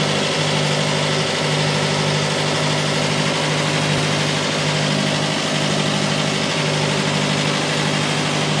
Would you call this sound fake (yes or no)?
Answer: no